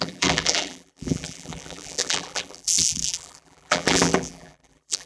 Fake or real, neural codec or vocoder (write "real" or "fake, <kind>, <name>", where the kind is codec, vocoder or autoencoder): fake, vocoder, BigVGAN v2